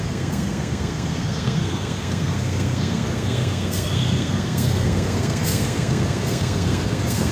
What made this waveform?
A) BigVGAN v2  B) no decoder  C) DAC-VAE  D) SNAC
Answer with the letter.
D